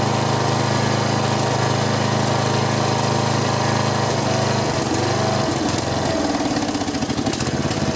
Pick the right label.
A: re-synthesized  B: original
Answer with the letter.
B